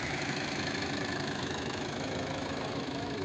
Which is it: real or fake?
fake